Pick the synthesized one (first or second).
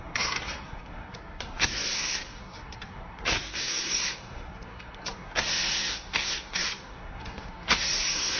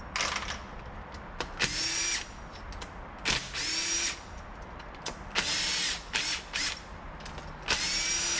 first